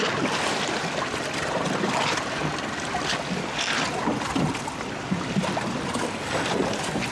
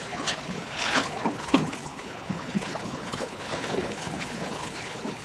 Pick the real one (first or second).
first